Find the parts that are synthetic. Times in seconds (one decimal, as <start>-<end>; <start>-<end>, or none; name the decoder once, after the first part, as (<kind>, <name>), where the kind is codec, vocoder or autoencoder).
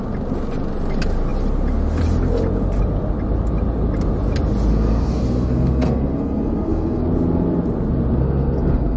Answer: 4.7-7.1 (codec, SNAC); 8.2-9.0